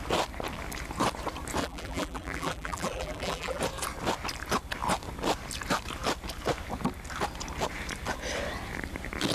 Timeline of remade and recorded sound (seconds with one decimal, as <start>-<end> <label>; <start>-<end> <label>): 0.0-1.6 recorded; 1.6-3.6 remade; 3.6-9.3 recorded